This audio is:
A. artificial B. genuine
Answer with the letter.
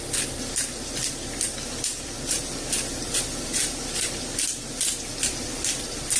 B